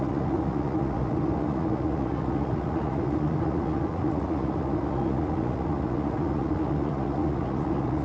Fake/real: fake